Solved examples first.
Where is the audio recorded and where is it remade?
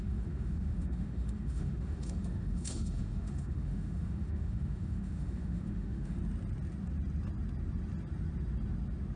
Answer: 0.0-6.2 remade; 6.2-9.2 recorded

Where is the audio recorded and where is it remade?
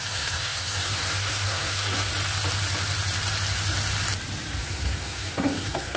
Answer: 0.0-2.1 remade; 2.1-4.6 recorded; 4.6-6.0 remade